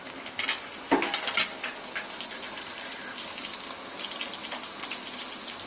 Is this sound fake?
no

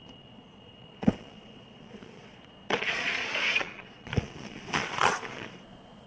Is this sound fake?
yes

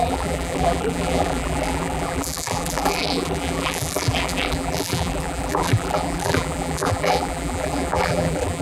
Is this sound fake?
yes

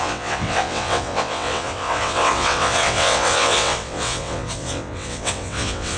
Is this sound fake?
yes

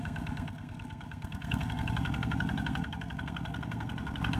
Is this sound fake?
yes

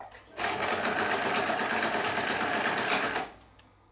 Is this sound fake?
no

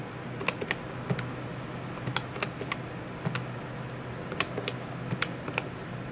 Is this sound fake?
no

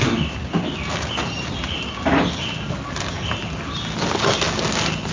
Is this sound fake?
no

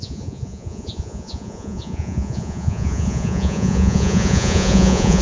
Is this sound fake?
yes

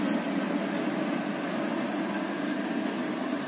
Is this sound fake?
no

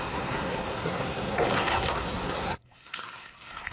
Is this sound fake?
yes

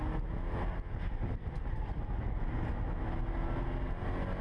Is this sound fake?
no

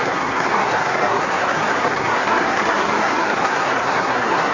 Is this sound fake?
yes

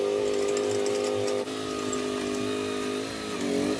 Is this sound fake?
no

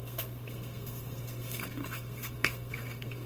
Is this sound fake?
yes